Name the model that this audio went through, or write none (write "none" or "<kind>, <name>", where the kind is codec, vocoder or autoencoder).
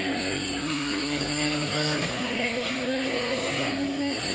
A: codec, SNAC